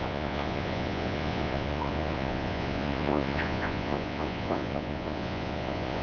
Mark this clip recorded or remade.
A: remade